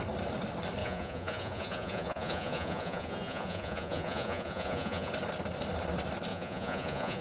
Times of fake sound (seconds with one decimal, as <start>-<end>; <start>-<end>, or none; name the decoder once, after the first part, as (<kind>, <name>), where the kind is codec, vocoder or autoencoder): 0.8-5.1 (vocoder, Vocos); 6.3-7.2